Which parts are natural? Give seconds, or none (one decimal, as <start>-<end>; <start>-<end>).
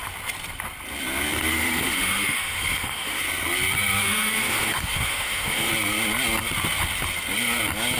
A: 0.0-1.5; 3.2-4.0; 5.7-8.0